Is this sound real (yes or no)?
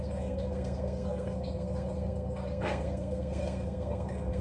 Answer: no